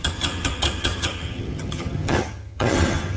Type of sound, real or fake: fake